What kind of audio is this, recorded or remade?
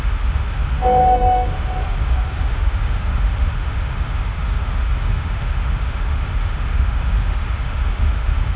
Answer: remade